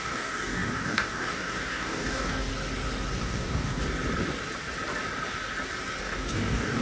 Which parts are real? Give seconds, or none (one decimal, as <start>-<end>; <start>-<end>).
2.5-3.2; 3.8-6.0